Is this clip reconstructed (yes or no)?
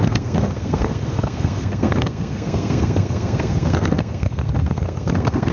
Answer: yes